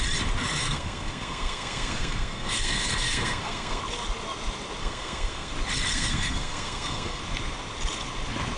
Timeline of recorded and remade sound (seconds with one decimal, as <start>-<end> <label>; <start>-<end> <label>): 0.0-0.6 recorded; 0.6-3.8 remade; 3.8-4.8 recorded; 4.8-5.5 remade; 5.5-5.9 recorded; 5.9-7.2 remade; 7.2-8.6 recorded